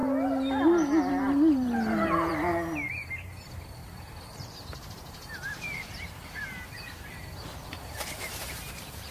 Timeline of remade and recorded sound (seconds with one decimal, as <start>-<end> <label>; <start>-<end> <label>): 0.0-1.1 recorded; 1.1-2.5 remade; 2.5-3.4 recorded; 3.4-9.1 remade